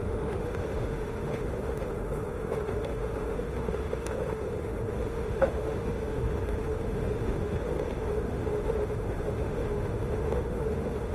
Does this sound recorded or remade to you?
remade